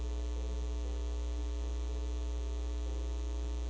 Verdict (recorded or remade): recorded